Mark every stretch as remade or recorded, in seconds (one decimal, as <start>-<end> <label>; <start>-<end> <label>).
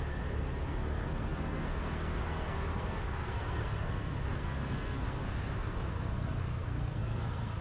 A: 0.0-7.6 remade